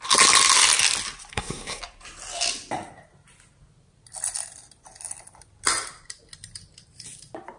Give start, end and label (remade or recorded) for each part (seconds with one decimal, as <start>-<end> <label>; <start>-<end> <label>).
0.0-1.3 recorded; 1.3-1.8 remade; 1.8-7.6 recorded